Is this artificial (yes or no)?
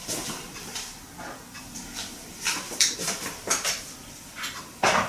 yes